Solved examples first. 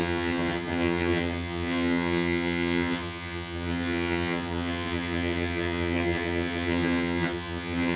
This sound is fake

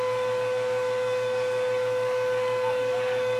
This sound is fake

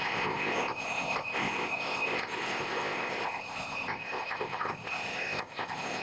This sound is fake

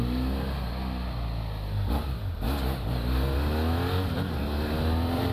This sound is real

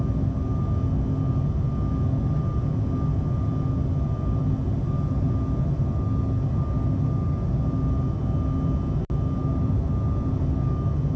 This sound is real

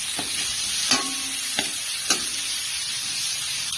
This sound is real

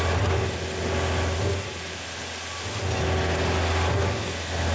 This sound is real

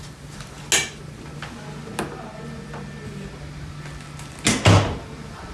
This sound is real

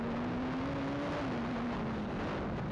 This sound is real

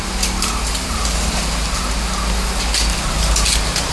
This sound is real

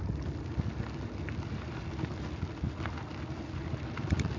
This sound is real